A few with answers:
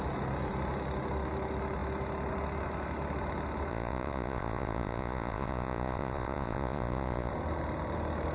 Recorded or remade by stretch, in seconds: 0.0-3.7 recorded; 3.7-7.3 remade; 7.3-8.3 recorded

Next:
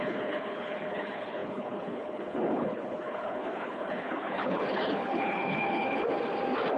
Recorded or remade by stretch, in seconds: 0.0-6.0 remade; 6.0-6.8 recorded

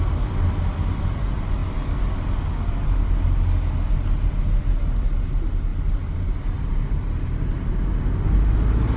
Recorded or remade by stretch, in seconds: 0.0-9.0 recorded

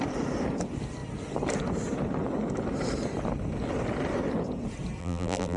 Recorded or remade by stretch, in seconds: 0.0-5.0 recorded; 5.0-5.6 remade

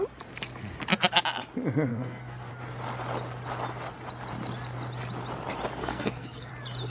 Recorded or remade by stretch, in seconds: 0.0-1.9 recorded; 1.9-2.5 remade; 2.5-5.8 recorded; 5.8-6.5 remade; 6.5-6.9 recorded

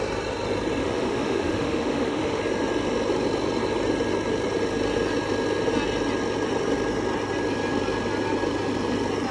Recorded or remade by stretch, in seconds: 0.0-0.8 recorded; 0.8-2.4 remade; 2.4-9.3 recorded

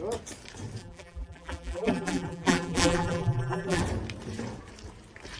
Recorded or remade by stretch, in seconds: 0.0-0.8 recorded; 0.8-3.8 remade; 3.8-5.4 recorded